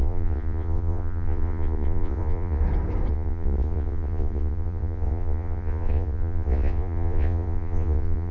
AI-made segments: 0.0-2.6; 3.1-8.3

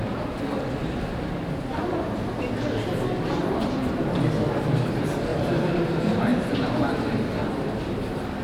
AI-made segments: 0.8-1.9; 5.3-5.8; 6.3-6.9

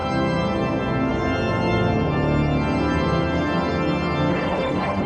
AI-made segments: 4.3-5.1

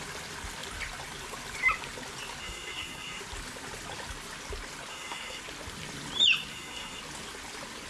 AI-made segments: 2.4-3.2; 4.9-5.4; 6.5-7.0

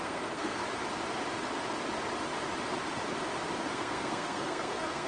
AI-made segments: 0.0-0.6; 3.7-5.1

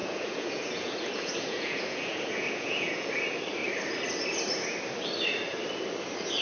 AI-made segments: 0.0-3.1

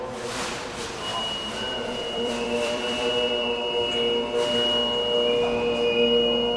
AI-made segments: 1.1-3.1